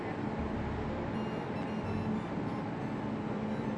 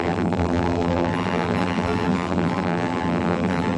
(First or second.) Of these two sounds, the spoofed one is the second